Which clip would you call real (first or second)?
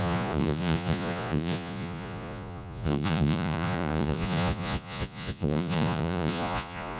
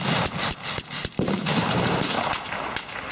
second